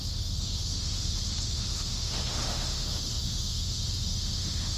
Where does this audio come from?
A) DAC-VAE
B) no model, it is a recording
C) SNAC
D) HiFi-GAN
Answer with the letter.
A